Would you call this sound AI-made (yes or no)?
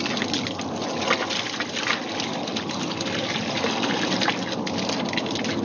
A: no